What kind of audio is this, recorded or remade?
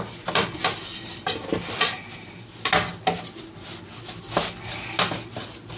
recorded